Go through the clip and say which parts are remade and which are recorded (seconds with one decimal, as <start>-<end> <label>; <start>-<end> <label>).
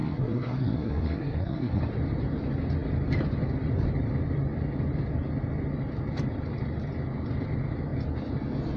0.0-1.8 remade; 1.8-8.8 recorded